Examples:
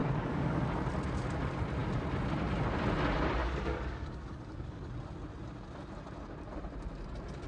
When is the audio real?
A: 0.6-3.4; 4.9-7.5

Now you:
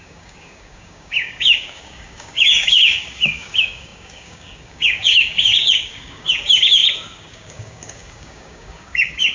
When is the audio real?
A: none

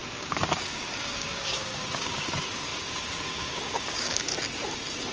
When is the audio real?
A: 4.3-5.1